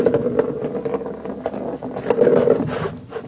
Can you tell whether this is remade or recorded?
recorded